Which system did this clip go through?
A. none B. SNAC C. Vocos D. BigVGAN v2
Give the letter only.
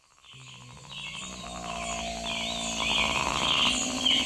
A